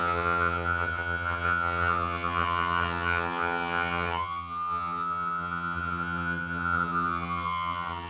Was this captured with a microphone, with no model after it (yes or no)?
no